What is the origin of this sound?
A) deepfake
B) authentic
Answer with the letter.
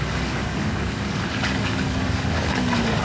A